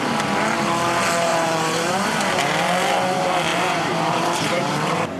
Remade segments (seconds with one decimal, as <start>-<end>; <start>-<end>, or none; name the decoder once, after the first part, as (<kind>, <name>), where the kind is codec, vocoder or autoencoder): 1.3-2.2 (vocoder, BigVGAN v2); 3.5-5.2